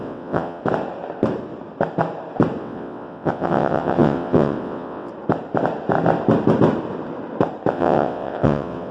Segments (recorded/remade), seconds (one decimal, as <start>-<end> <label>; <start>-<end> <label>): 0.0-0.6 remade; 0.6-2.6 recorded; 2.6-5.1 remade; 5.1-7.7 recorded; 7.7-8.9 remade